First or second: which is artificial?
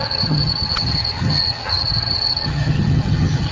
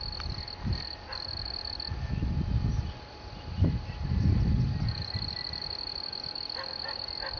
first